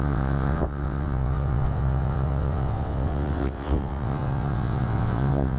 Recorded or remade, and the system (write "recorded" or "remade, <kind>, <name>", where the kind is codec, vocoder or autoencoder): remade, vocoder, WaveNeXt